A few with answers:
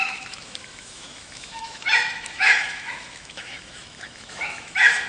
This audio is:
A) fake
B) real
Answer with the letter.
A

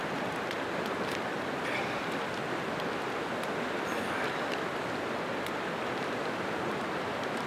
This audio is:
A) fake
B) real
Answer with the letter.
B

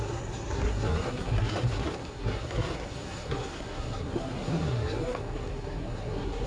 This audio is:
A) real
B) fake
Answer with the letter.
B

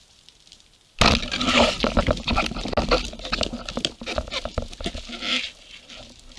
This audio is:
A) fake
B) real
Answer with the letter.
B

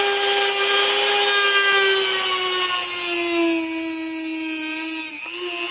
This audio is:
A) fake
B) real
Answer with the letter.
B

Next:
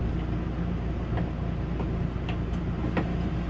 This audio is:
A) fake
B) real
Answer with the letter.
B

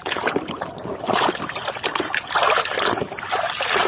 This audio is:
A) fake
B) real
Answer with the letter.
B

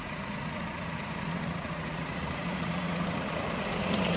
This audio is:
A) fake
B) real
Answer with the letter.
A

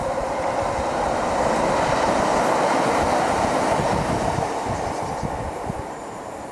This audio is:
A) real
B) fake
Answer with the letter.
A